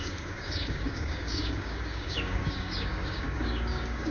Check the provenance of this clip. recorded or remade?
remade